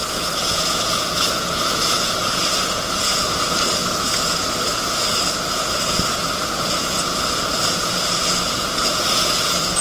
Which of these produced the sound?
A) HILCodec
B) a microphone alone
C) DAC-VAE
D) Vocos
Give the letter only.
D